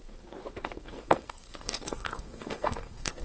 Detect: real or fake fake